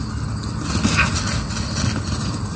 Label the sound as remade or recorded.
recorded